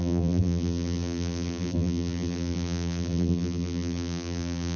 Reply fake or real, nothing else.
fake